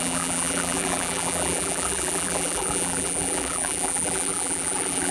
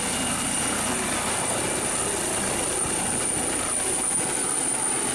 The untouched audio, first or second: second